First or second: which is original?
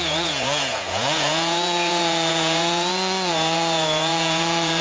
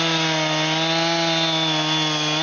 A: second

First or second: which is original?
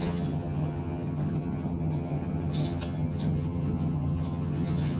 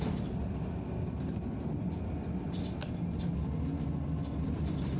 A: second